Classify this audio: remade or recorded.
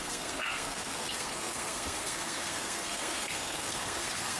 remade